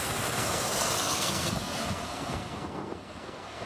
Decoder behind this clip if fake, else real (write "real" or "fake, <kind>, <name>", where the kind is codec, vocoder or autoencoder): fake, codec, SNAC